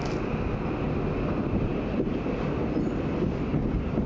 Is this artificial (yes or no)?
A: no